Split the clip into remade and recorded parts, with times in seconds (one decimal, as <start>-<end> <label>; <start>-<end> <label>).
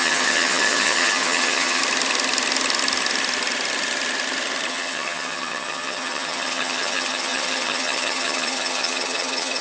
0.0-1.8 remade; 1.8-4.7 recorded; 4.7-9.6 remade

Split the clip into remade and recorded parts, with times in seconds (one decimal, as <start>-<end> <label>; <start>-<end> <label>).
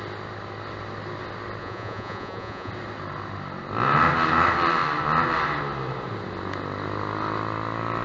0.0-1.6 recorded; 1.6-2.7 remade; 2.7-8.0 recorded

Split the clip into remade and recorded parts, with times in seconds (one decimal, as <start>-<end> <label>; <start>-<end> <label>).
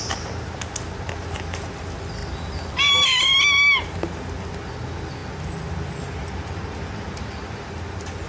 0.0-8.3 recorded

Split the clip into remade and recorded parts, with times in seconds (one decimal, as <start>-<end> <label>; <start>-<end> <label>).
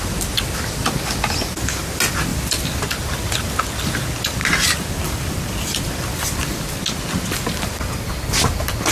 0.0-0.8 recorded; 0.8-1.8 remade; 1.8-2.3 recorded; 2.3-2.8 remade; 2.8-4.4 recorded; 4.4-6.8 remade; 6.8-8.9 recorded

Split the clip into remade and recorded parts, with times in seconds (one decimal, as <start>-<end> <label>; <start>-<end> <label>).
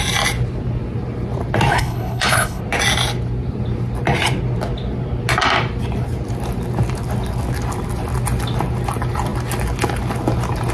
0.0-1.7 recorded; 1.7-2.6 remade; 2.6-10.7 recorded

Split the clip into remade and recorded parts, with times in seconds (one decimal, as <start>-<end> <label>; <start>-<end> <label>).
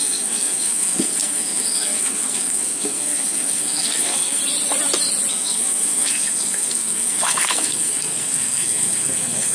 0.0-4.4 remade; 4.4-5.3 recorded; 5.3-9.5 remade